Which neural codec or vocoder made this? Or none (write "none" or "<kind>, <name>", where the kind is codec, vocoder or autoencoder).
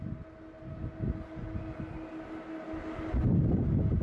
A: none